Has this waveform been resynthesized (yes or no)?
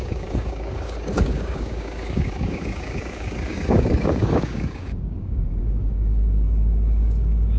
yes